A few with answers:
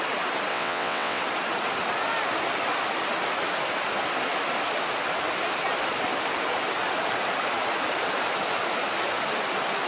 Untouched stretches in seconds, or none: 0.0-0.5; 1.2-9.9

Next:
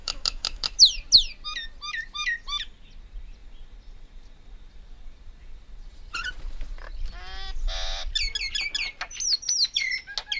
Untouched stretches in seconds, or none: 0.8-10.4